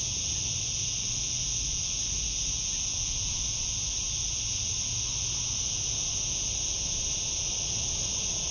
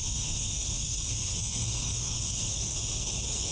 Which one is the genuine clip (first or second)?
first